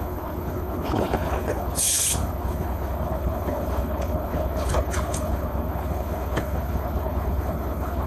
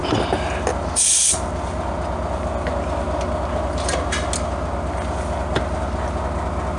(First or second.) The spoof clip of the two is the first